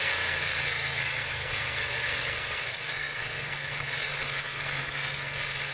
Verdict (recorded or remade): remade